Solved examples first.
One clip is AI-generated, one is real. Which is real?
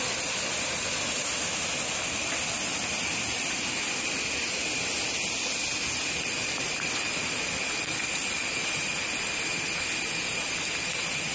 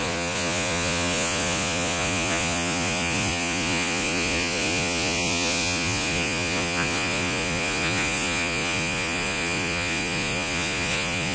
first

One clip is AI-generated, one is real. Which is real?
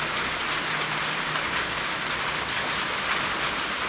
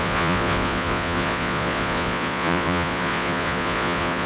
first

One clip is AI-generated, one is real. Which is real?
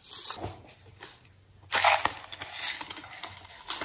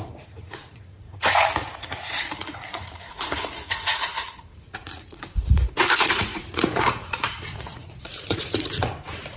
first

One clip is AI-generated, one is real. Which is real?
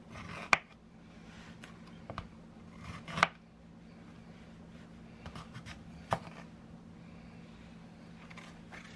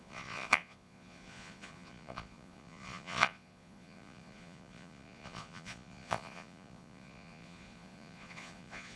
first